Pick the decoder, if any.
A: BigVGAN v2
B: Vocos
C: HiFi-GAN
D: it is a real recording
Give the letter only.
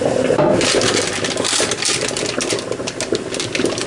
D